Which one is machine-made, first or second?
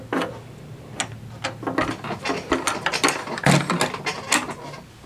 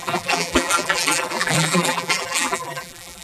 second